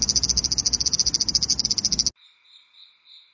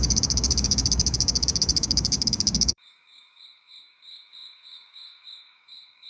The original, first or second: first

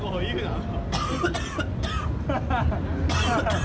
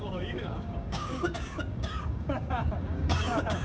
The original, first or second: first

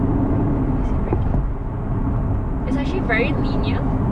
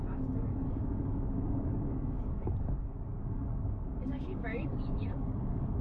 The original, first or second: first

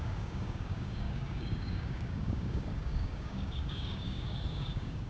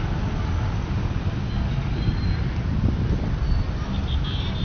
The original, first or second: second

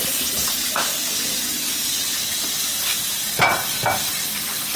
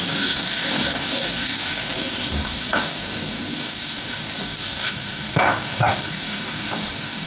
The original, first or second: first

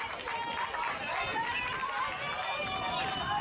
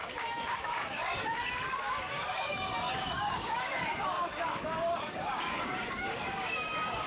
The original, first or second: first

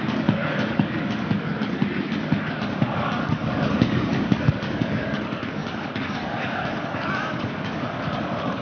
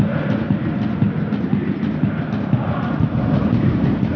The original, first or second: second